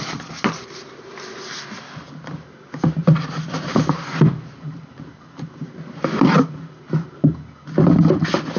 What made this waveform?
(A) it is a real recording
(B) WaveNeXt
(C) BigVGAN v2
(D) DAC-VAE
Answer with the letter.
A